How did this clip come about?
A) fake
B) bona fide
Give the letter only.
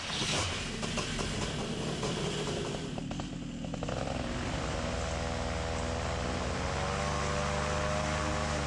B